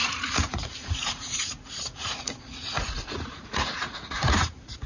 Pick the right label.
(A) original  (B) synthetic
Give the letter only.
B